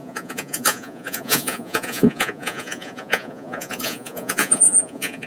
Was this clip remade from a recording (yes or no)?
yes